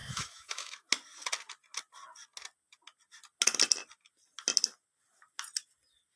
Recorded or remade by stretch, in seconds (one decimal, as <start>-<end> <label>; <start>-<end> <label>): 0.0-0.9 remade; 0.9-6.2 recorded